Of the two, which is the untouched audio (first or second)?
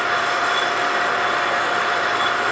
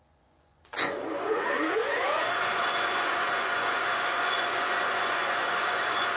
first